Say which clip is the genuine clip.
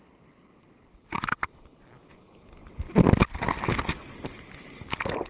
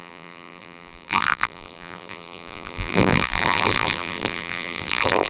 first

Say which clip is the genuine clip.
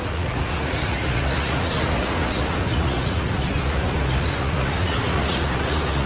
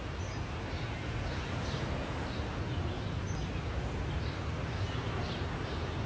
second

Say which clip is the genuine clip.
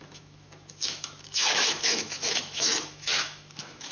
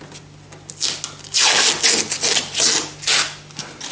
second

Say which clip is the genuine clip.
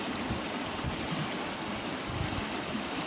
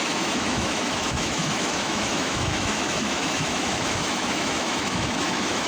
first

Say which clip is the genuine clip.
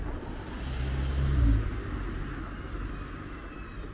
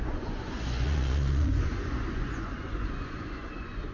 first